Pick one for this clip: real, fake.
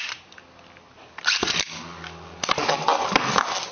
real